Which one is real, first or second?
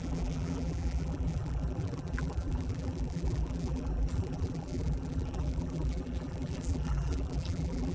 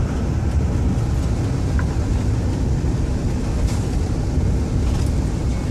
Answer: second